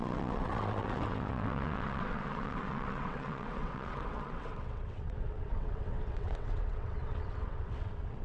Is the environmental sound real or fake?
fake